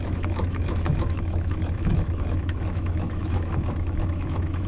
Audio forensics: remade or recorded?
remade